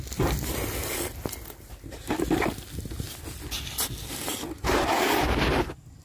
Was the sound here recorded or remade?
recorded